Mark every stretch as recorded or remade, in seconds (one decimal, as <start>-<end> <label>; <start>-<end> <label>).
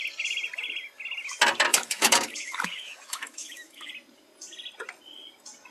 0.0-1.7 recorded; 1.7-3.9 remade; 3.9-5.7 recorded